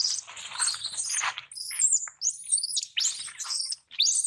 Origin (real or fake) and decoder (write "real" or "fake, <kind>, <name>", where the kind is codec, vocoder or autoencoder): real